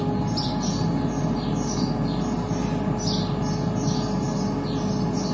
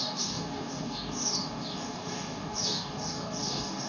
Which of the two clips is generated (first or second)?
second